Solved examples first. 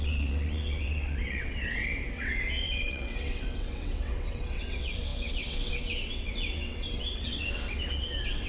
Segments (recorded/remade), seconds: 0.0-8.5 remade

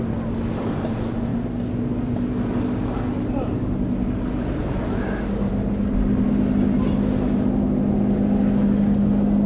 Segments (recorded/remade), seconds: 0.0-9.5 recorded

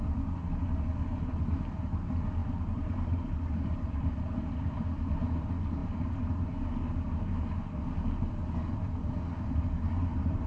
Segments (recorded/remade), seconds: 0.0-10.5 recorded

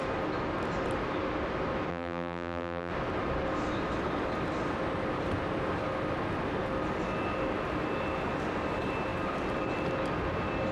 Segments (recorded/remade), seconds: 0.0-1.9 recorded; 1.9-2.9 remade; 2.9-10.7 recorded